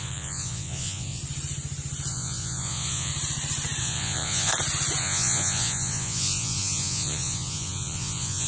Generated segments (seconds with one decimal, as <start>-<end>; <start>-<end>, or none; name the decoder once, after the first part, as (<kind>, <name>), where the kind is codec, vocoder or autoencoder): 0.0-1.2 (vocoder, Vocos); 2.1-3.1; 3.8-4.5; 5.0-8.5